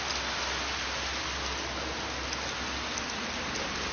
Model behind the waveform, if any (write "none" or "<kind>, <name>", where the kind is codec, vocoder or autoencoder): none